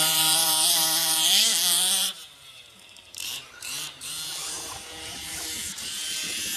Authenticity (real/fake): fake